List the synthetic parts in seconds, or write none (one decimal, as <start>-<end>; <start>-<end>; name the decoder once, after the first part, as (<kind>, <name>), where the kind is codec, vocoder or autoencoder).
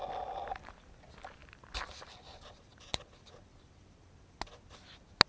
none